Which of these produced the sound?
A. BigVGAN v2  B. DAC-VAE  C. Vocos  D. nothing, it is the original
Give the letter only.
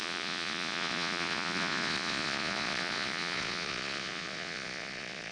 C